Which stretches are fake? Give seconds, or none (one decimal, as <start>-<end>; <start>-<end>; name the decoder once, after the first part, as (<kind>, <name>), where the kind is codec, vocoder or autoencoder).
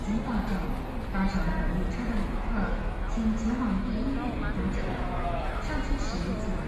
2.2-4.0 (autoencoder, DAC-VAE); 4.9-5.5